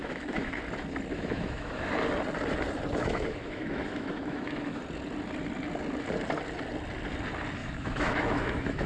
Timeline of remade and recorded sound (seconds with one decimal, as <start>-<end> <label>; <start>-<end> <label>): 0.0-0.6 remade; 0.6-1.1 recorded; 1.1-1.9 remade; 1.9-3.0 recorded; 3.0-4.8 remade; 4.8-7.6 recorded; 7.6-8.9 remade